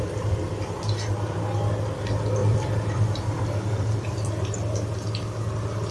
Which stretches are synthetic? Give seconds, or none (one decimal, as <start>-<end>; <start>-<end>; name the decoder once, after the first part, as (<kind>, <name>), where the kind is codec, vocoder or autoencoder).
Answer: 2.4-4.3 (vocoder, BigVGAN v2)